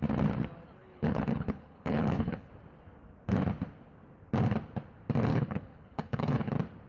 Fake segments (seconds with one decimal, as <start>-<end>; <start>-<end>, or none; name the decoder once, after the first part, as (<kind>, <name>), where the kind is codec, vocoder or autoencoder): 0.8-2.5 (codec, HILCodec); 5.3-6.5